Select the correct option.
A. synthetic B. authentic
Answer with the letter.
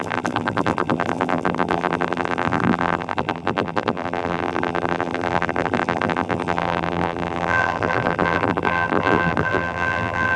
A